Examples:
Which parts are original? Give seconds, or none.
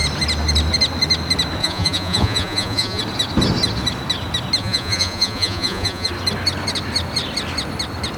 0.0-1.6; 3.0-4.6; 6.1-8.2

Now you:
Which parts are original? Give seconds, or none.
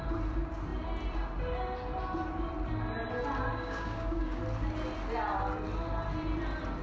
0.0-3.5; 4.4-6.8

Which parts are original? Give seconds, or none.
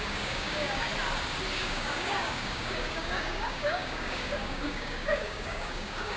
0.9-1.5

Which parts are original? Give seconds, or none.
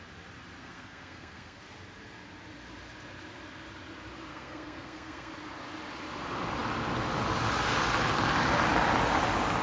0.0-0.6; 1.6-4.3; 5.3-9.6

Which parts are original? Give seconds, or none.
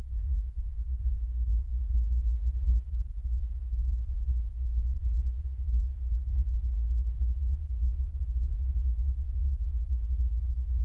6.8-10.8